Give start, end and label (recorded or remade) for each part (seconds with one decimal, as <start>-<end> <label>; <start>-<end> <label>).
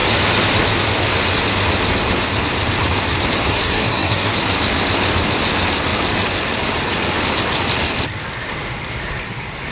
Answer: 0.0-3.5 recorded; 3.5-4.3 remade; 4.3-9.7 recorded